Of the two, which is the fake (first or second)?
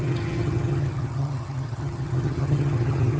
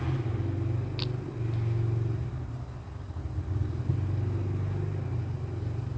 first